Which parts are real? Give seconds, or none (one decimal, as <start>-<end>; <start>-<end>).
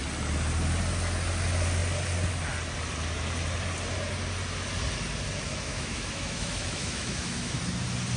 0.0-5.7; 7.6-8.2